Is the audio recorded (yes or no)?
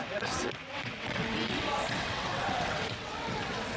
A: no